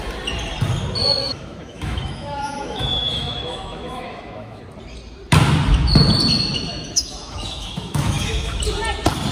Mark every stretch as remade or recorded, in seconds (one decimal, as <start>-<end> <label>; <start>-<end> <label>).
0.0-1.2 recorded; 1.2-4.6 remade; 4.6-6.7 recorded; 6.7-8.6 remade; 8.6-9.3 recorded